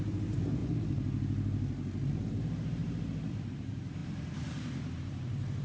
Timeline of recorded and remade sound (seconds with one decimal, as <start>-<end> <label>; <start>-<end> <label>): 0.0-0.6 remade; 0.6-2.1 recorded; 2.1-5.6 remade

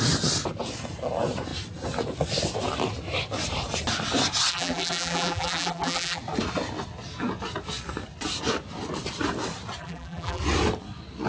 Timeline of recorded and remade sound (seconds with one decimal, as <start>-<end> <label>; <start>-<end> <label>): 0.0-4.5 recorded; 4.5-6.2 remade; 6.2-9.8 recorded; 9.8-10.4 remade; 10.4-11.3 recorded